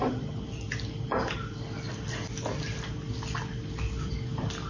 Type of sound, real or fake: real